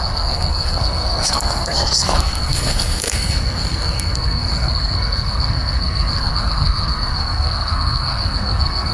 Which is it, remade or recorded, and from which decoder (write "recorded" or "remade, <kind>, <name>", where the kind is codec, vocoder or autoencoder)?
remade, codec, SNAC